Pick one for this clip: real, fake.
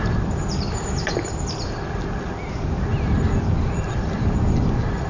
real